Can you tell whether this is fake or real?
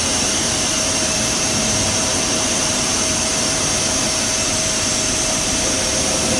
fake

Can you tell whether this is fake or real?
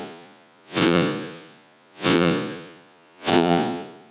fake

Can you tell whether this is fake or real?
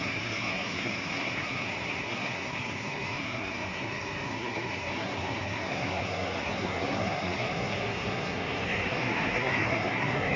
fake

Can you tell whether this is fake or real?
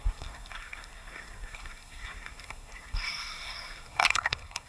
fake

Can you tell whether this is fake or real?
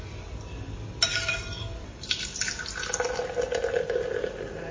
real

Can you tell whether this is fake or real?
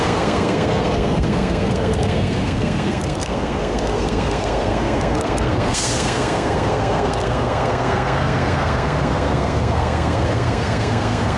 fake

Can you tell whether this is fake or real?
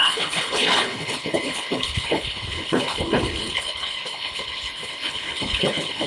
fake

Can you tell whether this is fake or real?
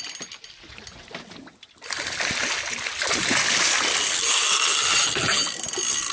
real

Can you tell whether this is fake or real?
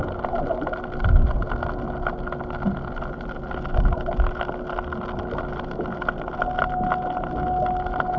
real